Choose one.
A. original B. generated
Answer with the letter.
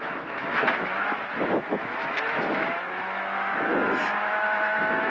B